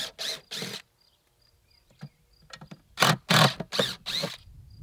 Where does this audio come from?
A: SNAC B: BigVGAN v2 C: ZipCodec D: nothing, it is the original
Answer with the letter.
D